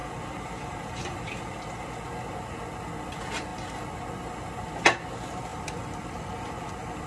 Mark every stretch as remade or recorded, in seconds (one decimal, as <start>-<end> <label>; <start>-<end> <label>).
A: 0.0-1.6 remade; 1.6-5.5 recorded; 5.5-7.1 remade